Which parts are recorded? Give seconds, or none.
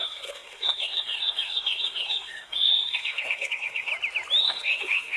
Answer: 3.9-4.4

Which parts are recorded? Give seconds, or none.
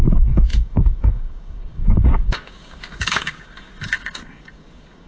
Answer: none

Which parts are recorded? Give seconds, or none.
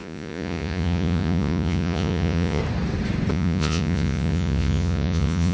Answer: 2.6-3.3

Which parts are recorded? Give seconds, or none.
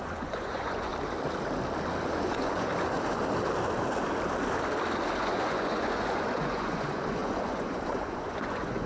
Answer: 0.9-2.2; 2.7-5.2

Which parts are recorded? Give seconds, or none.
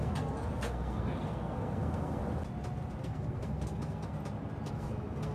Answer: 2.2-3.0; 4.2-4.7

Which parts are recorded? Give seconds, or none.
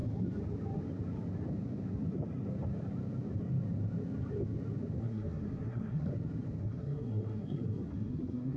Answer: 0.0-5.0; 6.1-6.6